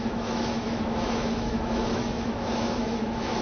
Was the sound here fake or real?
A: fake